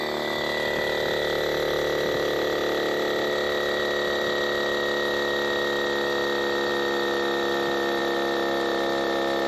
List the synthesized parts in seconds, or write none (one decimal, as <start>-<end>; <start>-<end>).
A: none